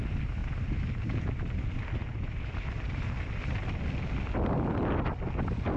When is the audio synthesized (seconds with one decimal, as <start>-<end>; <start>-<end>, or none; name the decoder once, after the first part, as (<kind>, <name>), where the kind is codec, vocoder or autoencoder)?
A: none